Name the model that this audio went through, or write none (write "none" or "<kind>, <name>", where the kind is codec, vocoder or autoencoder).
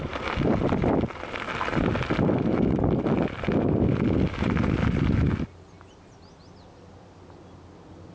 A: none